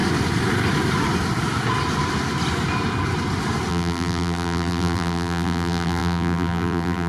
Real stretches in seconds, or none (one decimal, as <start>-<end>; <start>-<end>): 0.0-3.7